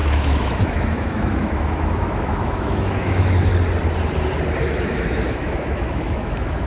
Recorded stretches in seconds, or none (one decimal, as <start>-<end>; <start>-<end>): 3.5-4.6